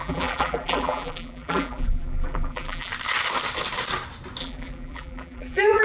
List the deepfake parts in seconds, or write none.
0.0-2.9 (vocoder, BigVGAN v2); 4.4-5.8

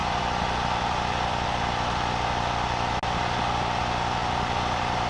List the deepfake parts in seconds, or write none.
0.0-1.6 (vocoder, BigVGAN v2); 4.2-5.1

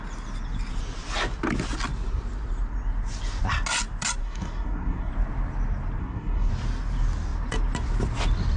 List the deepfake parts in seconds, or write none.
4.2-5.1 (codec, SNAC); 6.0-6.5

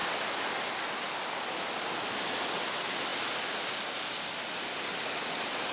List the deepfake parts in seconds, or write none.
none

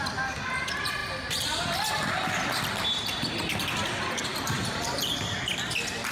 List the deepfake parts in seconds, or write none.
4.3-5.1 (vocoder, BigVGAN v2)